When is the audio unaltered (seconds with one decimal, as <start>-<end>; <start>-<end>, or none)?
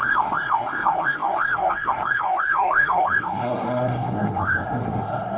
none